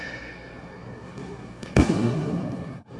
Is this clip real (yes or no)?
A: no